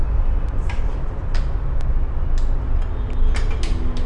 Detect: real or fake real